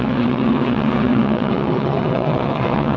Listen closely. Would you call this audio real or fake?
fake